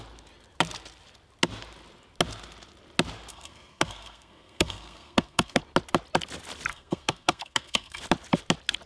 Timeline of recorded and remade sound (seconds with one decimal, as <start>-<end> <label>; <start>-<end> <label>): 0.0-3.3 recorded; 3.3-5.6 remade; 5.6-6.7 recorded; 6.7-8.0 remade; 8.0-8.9 recorded